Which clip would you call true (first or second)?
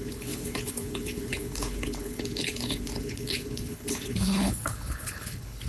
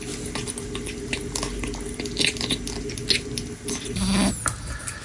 second